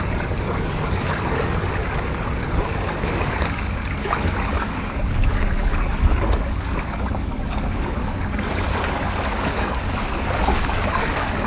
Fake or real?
fake